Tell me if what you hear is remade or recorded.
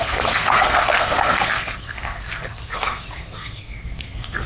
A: remade